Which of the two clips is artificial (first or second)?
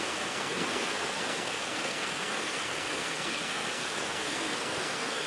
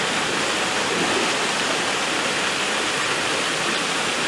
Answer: first